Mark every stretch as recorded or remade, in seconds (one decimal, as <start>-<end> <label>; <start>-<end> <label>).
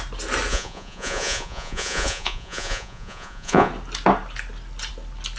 0.0-0.5 recorded; 0.5-3.7 remade; 3.7-5.4 recorded